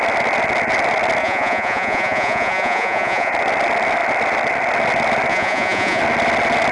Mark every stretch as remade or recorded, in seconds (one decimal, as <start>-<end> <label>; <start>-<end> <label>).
0.0-1.2 recorded; 1.2-3.3 remade; 3.3-5.3 recorded; 5.3-6.0 remade; 6.0-6.7 recorded